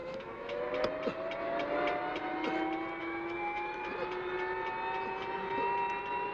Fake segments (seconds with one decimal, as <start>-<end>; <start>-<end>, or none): 0.0-0.6; 3.0-3.9